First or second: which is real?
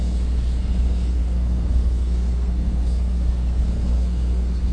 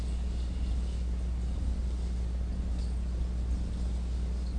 second